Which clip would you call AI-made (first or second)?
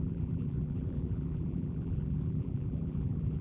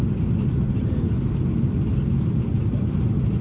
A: first